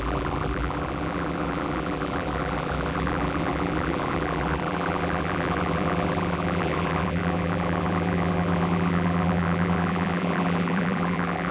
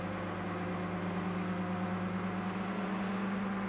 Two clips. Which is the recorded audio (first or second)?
second